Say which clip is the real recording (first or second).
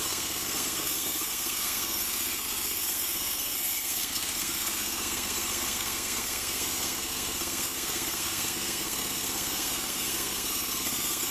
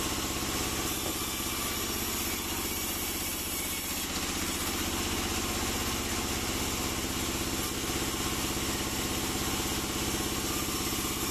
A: second